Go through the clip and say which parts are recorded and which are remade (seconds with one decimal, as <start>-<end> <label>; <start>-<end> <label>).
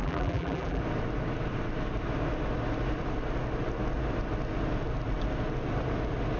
0.0-0.8 remade; 0.8-6.4 recorded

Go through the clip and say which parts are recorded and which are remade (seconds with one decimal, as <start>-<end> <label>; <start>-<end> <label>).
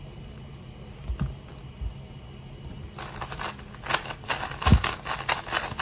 0.0-4.7 recorded; 4.7-5.3 remade; 5.3-5.8 recorded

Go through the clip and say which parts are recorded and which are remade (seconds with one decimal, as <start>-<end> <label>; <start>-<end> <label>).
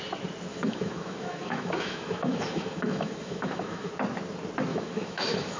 0.0-0.5 recorded; 0.5-3.9 remade; 3.9-4.7 recorded; 4.7-5.6 remade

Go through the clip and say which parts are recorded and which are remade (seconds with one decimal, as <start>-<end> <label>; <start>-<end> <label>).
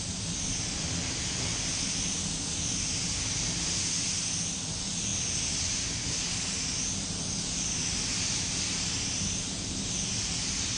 0.0-10.8 recorded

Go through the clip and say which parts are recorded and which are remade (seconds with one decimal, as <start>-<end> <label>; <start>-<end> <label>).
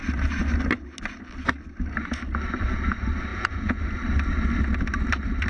0.0-3.3 recorded; 3.3-3.8 remade; 3.8-5.5 recorded